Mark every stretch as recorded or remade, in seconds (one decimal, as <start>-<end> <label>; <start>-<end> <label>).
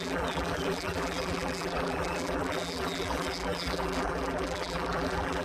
0.0-5.4 remade